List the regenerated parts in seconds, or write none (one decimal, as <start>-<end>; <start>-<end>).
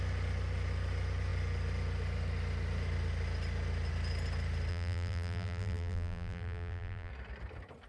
4.7-7.1